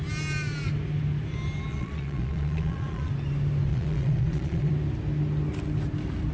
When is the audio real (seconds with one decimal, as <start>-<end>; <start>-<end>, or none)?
0.0-1.7; 3.1-3.7; 4.7-6.3